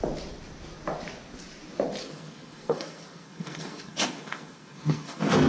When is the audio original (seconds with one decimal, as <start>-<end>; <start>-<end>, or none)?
0.0-2.0